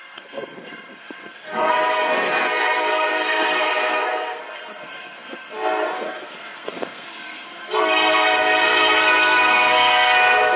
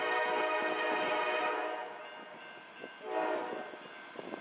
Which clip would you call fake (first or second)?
first